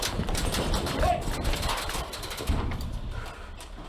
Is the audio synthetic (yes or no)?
yes